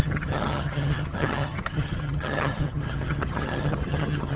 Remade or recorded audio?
remade